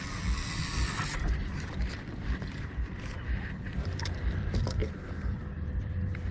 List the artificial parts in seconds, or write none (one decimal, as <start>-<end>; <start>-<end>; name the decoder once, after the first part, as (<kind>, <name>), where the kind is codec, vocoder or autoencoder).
0.0-4.8 (vocoder, BigVGAN v2); 5.7-6.3